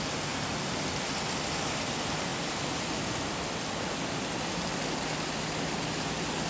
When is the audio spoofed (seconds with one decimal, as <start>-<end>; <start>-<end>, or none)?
none